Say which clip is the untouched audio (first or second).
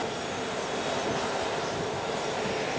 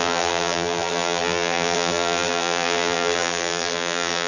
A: first